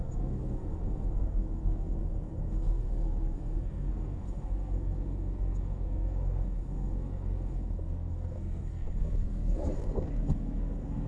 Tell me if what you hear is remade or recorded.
remade